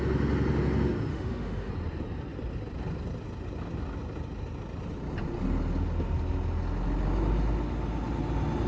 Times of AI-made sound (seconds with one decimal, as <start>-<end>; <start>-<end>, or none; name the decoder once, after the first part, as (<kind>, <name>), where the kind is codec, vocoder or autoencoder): 1.1-1.7 (autoencoder, DAC-VAE)